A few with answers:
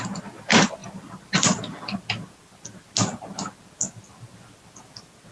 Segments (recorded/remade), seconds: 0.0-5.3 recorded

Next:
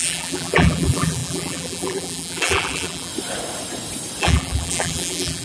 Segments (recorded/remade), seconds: 0.0-3.1 remade; 3.1-4.2 recorded; 4.2-5.4 remade

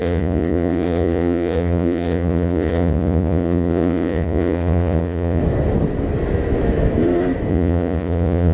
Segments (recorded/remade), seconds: 0.0-5.4 remade; 5.4-7.5 recorded; 7.5-8.5 remade

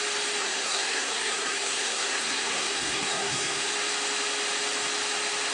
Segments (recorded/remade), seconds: 0.0-0.4 recorded; 0.4-3.7 remade; 3.7-5.5 recorded

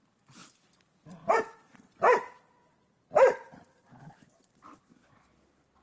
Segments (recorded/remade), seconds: 0.0-5.8 recorded

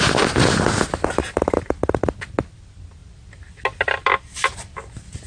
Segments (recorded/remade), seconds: 0.0-5.3 recorded